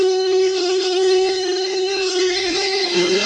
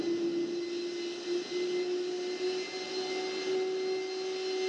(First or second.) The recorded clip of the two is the second